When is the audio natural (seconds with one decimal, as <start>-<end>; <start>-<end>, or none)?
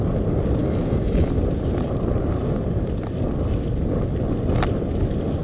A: 0.0-0.6; 1.3-5.4